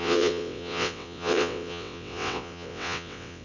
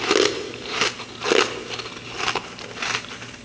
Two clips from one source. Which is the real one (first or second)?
second